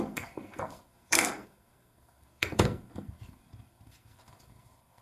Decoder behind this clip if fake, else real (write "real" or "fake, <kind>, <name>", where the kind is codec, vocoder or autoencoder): fake, codec, SNAC